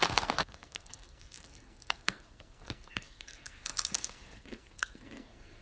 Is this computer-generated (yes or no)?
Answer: yes